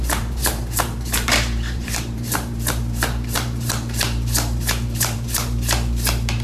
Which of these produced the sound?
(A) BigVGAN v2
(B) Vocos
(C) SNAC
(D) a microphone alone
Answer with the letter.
A